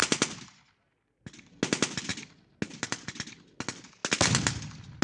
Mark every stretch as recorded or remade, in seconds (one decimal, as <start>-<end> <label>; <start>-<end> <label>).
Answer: 0.0-5.0 recorded